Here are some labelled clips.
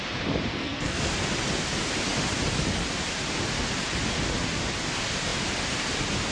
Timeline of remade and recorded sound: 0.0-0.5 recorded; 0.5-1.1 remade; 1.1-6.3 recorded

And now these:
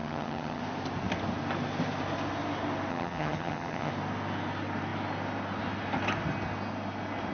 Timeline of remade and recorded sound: 0.0-0.6 remade; 0.6-2.9 recorded; 2.9-3.9 remade; 3.9-7.3 recorded

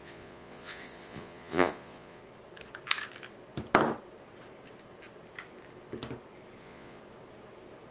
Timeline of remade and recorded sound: 0.0-2.2 remade; 2.2-6.6 recorded; 6.6-7.0 remade; 7.0-7.9 recorded

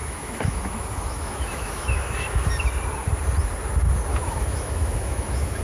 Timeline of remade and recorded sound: 0.0-2.5 remade; 2.5-4.1 recorded; 4.1-5.6 remade

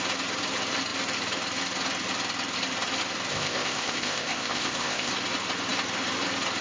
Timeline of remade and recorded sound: 0.0-3.3 recorded; 3.3-5.1 remade; 5.1-6.6 recorded

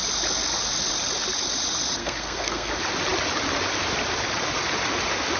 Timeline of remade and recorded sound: 0.0-2.0 recorded; 2.0-2.7 remade; 2.7-5.4 recorded

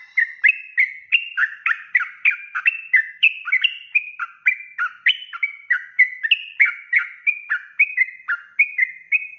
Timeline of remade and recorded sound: 0.0-0.7 recorded; 0.7-4.1 remade; 4.1-9.4 recorded

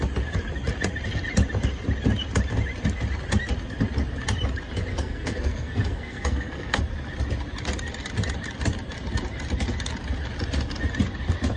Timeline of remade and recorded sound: 0.0-4.9 recorded; 4.9-6.8 remade; 6.8-11.6 recorded